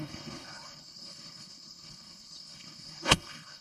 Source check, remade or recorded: remade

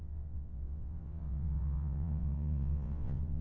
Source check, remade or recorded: remade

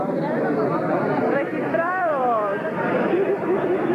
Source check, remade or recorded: remade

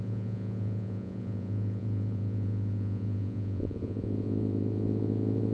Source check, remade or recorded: remade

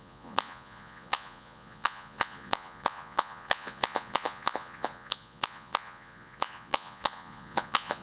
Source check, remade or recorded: remade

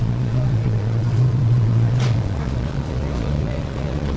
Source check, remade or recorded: remade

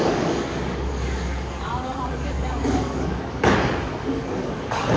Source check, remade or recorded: remade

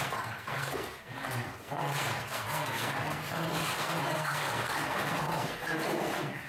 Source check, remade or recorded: remade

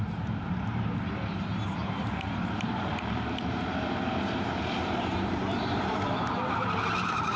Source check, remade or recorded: remade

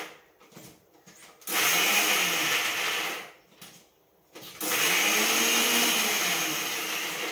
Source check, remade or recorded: recorded